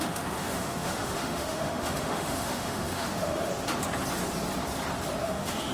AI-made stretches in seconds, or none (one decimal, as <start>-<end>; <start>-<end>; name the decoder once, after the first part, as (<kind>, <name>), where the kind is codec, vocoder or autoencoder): 0.0-3.5 (autoencoder, DAC-VAE); 5.2-5.7